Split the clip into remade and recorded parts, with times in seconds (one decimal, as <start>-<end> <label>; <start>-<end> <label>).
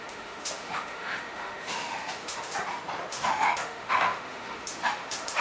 0.0-2.5 remade; 2.5-3.1 recorded; 3.1-5.4 remade